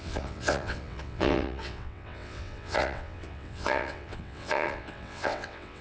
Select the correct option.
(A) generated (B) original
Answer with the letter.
A